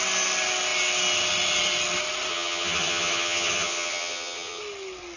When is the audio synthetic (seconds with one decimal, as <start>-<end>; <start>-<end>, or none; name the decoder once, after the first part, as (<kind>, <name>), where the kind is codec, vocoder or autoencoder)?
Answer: 2.3-4.6 (vocoder, HiFi-GAN)

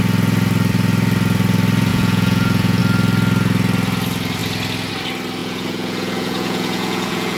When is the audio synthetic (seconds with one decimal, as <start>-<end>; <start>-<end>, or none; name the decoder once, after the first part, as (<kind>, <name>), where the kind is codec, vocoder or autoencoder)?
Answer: 1.9-2.8 (vocoder, Vocos); 5.4-7.4

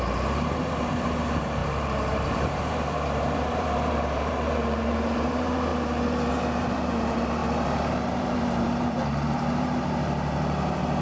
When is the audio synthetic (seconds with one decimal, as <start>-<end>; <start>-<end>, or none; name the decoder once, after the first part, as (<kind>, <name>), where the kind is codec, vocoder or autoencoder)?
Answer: 0.0-5.7 (vocoder, BigVGAN v2); 6.3-11.0

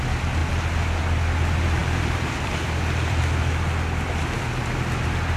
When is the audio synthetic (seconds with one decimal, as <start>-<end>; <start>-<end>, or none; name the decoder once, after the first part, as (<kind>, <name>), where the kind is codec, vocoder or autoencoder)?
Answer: 1.8-3.2 (vocoder, BigVGAN v2)